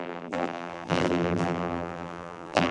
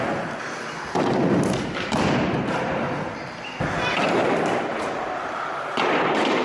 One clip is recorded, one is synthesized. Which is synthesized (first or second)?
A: first